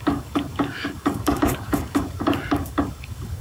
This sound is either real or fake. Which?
fake